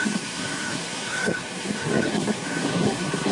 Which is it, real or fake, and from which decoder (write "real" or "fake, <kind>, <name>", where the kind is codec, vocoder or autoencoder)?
fake, codec, SNAC